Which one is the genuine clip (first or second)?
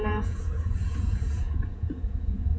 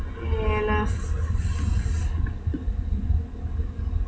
second